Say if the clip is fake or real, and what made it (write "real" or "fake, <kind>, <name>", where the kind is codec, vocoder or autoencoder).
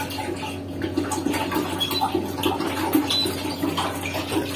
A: real